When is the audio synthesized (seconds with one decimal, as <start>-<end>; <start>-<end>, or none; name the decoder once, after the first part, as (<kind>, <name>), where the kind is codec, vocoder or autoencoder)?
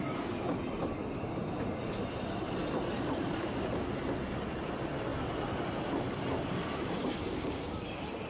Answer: 7.0-7.7 (codec, DAC)